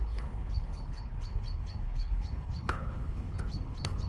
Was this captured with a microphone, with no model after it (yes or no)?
no